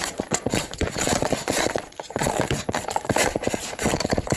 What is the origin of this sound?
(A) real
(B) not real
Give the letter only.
B